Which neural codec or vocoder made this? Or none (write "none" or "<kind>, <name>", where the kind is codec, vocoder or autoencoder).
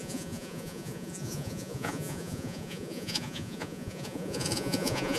vocoder, Vocos